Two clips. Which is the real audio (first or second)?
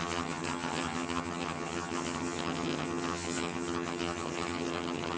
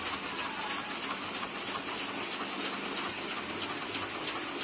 second